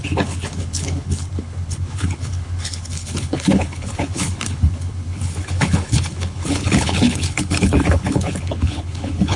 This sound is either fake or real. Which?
fake